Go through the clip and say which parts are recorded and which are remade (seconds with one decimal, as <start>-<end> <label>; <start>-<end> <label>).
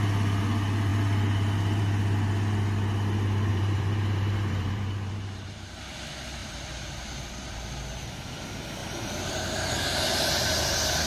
0.0-3.5 recorded; 3.5-5.8 remade; 5.8-6.4 recorded; 6.4-7.8 remade; 7.8-8.8 recorded; 8.8-10.0 remade; 10.0-11.1 recorded